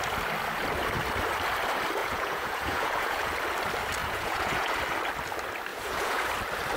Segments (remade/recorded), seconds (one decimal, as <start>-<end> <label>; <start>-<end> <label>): 0.0-2.0 recorded; 2.0-3.3 remade; 3.3-4.0 recorded; 4.0-4.7 remade; 4.7-5.7 recorded; 5.7-6.3 remade; 6.3-6.8 recorded